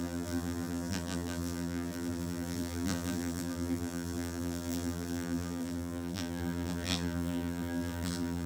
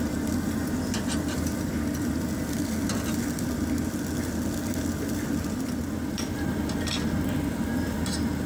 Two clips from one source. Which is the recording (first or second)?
second